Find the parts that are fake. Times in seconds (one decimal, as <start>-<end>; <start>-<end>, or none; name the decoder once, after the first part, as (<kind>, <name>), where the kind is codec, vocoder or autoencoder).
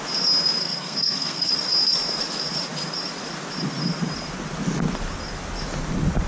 0.6-1.5 (codec, SNAC)